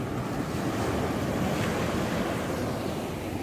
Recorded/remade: recorded